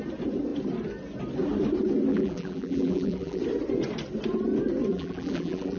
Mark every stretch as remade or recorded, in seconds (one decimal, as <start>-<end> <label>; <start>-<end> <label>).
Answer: 0.0-2.1 recorded; 2.1-3.4 remade; 3.4-4.9 recorded; 4.9-5.8 remade